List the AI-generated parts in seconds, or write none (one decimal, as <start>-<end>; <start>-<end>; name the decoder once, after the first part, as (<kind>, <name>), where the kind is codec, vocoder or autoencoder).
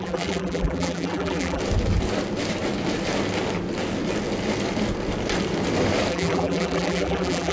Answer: 0.0-1.6 (vocoder, BigVGAN v2); 6.1-7.5